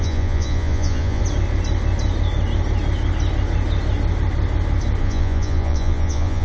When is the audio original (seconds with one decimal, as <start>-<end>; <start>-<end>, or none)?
1.2-5.0